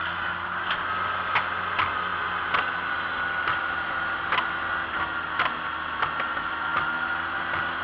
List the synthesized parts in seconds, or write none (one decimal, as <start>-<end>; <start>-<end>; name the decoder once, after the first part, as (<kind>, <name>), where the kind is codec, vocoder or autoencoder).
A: none